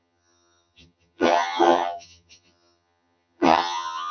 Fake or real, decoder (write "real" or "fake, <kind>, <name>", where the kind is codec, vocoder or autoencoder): fake, vocoder, HiFi-GAN